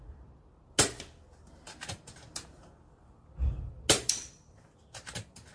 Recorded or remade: recorded